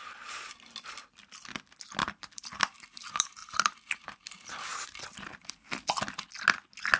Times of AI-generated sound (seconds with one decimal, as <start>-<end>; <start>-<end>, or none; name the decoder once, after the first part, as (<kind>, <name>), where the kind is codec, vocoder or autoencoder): 2.0-3.0 (vocoder, BigVGAN v2); 3.4-5.7